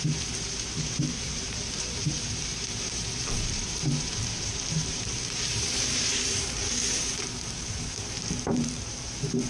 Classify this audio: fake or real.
fake